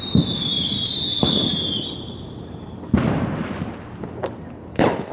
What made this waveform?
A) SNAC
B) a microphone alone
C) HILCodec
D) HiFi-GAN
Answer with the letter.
B